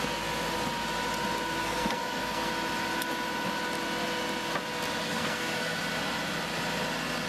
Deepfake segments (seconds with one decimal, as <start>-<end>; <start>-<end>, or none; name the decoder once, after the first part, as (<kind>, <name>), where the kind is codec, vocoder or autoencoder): 1.6-2.5 (codec, SNAC); 5.0-5.8